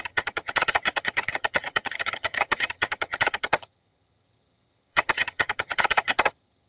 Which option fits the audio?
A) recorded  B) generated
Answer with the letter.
B